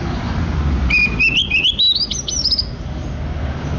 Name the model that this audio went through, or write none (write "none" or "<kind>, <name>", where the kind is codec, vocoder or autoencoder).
none